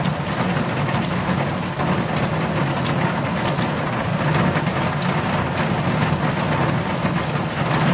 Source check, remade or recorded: recorded